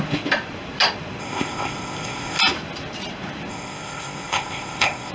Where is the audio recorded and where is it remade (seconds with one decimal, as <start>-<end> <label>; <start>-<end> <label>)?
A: 0.0-1.2 recorded; 1.2-2.4 remade; 2.4-3.5 recorded; 3.5-5.1 remade